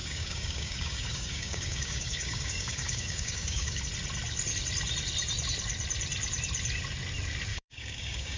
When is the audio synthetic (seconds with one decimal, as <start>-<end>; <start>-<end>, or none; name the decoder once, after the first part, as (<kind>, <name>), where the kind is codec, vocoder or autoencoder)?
0.0-3.8 (codec, DAC); 7.5-8.4